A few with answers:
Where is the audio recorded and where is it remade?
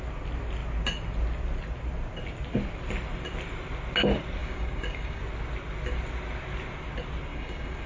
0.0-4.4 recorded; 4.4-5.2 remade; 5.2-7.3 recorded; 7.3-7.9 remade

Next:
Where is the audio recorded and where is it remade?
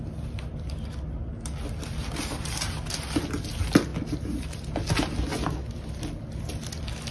0.0-7.1 recorded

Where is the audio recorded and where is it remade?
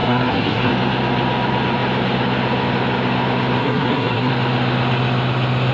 0.0-0.7 remade; 0.7-3.6 recorded; 3.6-4.3 remade; 4.3-5.7 recorded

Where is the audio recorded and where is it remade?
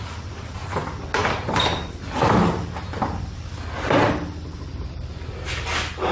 0.0-6.1 recorded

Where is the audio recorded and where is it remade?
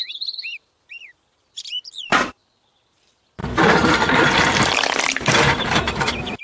0.0-0.6 recorded; 0.6-6.4 remade